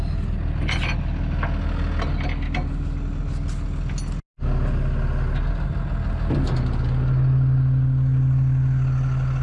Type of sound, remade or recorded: recorded